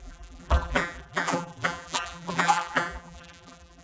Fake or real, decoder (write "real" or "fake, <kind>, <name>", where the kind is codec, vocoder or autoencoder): fake, vocoder, BigVGAN v2